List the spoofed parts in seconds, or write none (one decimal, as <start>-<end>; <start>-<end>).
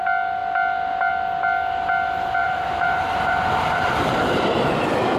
2.4-4.7